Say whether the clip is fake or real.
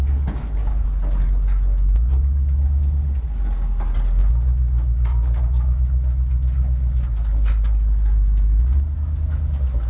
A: real